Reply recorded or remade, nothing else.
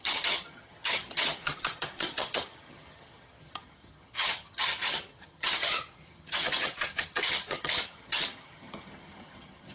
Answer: remade